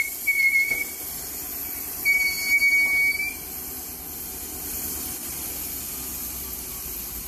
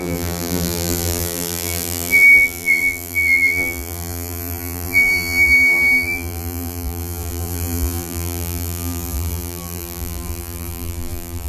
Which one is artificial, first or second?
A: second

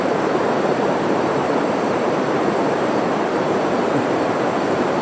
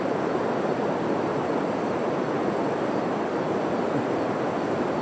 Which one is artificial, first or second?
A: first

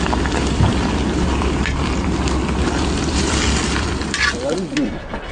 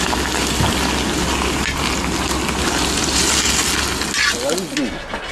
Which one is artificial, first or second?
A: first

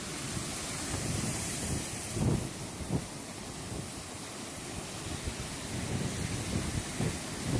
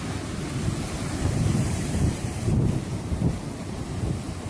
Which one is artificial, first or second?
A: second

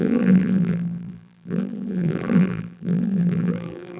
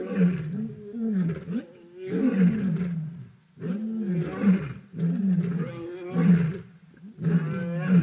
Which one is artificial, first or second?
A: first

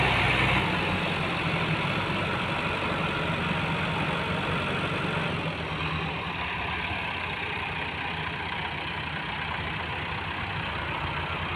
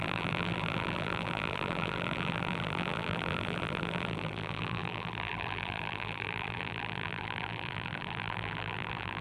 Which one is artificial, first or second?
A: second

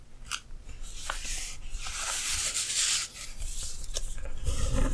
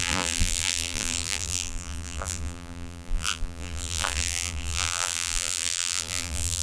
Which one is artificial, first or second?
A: second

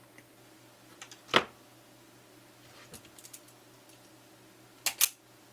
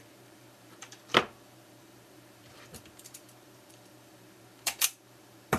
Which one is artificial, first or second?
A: second